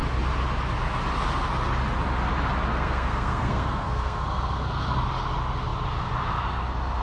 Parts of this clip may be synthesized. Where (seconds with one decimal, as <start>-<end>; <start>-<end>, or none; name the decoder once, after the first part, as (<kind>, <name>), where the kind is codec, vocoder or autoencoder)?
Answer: 2.7-5.1 (codec, SNAC)

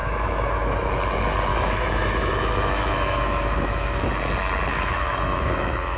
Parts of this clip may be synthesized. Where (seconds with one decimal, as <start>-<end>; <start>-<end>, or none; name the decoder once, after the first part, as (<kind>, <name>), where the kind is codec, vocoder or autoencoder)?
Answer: 0.0-0.9 (autoencoder, DAC-VAE); 1.5-4.1; 4.7-6.0

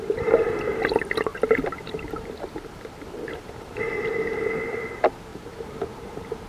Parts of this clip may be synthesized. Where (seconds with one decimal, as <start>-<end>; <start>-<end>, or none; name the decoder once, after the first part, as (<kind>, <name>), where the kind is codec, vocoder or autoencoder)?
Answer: 1.3-3.8 (vocoder, BigVGAN v2); 5.3-6.1

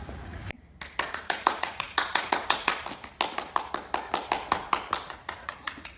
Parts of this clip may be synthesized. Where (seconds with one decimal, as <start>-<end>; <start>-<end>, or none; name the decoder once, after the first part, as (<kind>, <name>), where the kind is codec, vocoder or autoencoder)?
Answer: 0.0-0.4 (vocoder, Vocos); 1.1-2.7; 5.1-6.0